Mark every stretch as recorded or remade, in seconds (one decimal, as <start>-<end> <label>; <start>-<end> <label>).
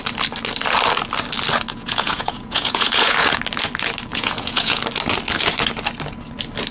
0.0-1.7 recorded; 1.7-3.4 remade; 3.4-4.1 recorded; 4.1-4.8 remade; 4.8-6.7 recorded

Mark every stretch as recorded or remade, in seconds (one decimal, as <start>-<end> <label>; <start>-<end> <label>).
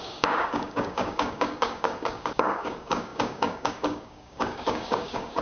0.0-5.4 remade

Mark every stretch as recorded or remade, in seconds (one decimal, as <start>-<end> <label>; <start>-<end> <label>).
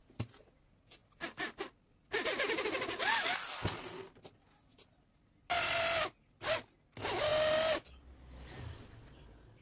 0.0-9.6 recorded